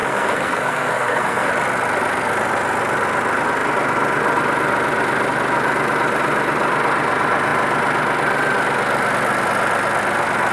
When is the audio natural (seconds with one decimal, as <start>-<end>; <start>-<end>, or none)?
1.5-10.5